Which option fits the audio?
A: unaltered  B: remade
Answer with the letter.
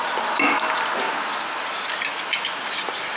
A